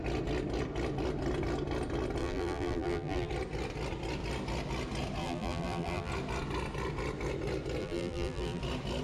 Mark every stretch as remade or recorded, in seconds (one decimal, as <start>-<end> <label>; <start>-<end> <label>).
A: 0.0-2.2 recorded; 2.2-3.3 remade; 3.3-5.2 recorded; 5.2-6.1 remade; 6.1-7.8 recorded; 7.8-8.6 remade; 8.6-9.0 recorded

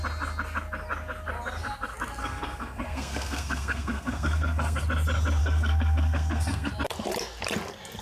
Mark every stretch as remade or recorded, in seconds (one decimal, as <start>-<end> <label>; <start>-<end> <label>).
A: 0.0-2.2 recorded; 2.2-4.8 remade; 4.8-5.4 recorded; 5.4-6.7 remade; 6.7-8.0 recorded

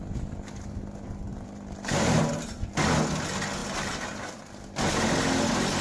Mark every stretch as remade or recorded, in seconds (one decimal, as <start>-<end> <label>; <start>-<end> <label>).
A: 0.0-1.3 recorded; 1.3-2.7 remade; 2.7-3.6 recorded; 3.6-4.4 remade; 4.4-5.8 recorded